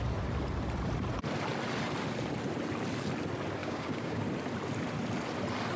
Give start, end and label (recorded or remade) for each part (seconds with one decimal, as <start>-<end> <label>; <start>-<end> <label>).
0.0-3.6 recorded; 3.6-4.2 remade; 4.2-5.8 recorded